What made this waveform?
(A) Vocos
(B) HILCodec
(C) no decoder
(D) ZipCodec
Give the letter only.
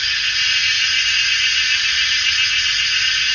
C